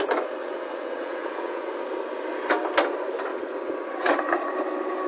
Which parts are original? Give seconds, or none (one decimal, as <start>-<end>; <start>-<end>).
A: 0.0-0.4; 1.7-3.3; 4.2-5.1